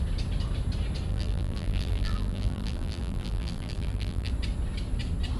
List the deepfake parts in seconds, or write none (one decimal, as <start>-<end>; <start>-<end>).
1.1-4.3